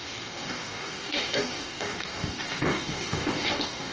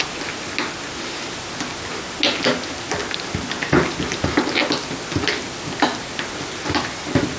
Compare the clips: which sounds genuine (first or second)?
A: second